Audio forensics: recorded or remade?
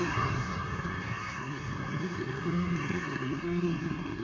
remade